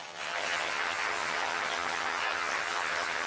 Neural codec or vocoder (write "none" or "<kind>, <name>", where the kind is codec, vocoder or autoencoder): vocoder, HiFi-GAN